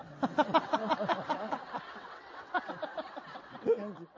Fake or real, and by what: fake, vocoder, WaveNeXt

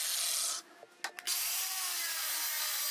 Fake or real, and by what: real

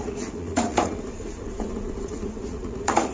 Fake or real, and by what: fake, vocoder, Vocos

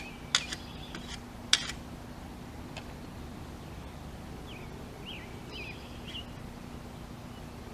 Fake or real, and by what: real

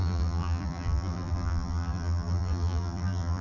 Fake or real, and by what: fake, vocoder, BigVGAN v2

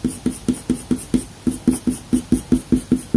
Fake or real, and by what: real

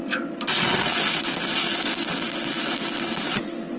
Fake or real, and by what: real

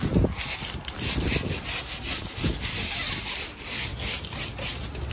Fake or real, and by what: real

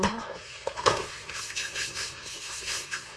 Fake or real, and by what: fake, codec, SNAC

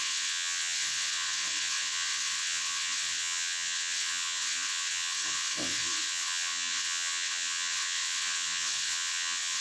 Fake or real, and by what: fake, vocoder, WaveNeXt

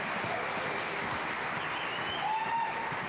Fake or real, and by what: real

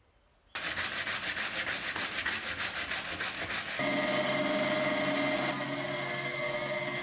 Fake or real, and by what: real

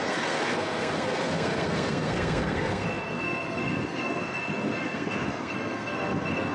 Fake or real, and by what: fake, codec, SNAC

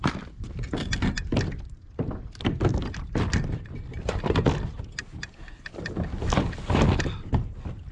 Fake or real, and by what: real